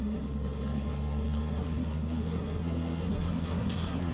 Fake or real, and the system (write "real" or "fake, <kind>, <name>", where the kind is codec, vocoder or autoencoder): fake, codec, SNAC